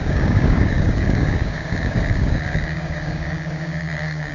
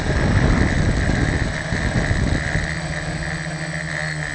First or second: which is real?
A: second